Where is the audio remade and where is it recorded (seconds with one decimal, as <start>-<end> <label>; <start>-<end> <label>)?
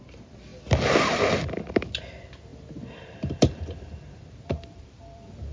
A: 0.0-0.5 remade; 0.5-1.7 recorded; 1.7-5.5 remade